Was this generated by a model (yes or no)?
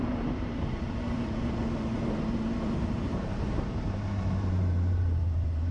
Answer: yes